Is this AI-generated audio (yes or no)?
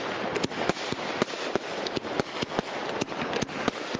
no